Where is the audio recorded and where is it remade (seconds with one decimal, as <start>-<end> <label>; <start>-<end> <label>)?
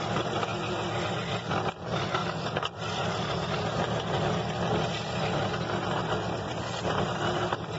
0.0-7.8 recorded